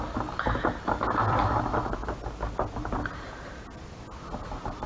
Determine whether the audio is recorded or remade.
recorded